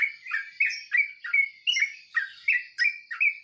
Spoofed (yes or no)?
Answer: no